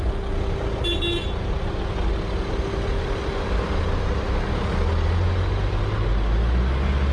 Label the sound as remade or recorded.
recorded